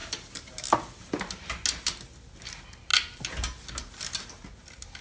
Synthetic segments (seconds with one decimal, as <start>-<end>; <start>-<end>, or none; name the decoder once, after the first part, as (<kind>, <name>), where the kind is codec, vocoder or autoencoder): none